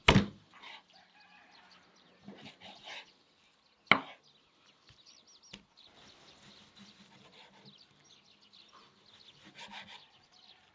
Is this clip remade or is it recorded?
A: recorded